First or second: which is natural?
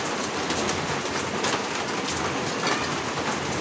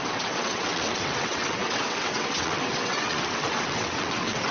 first